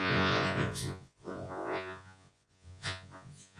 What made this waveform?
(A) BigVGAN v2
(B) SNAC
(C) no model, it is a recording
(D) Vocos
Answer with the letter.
D